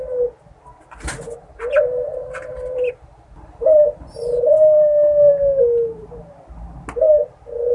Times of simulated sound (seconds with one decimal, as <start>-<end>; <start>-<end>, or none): 1.4-5.3